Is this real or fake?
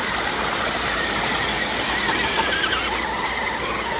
real